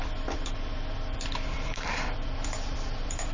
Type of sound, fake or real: real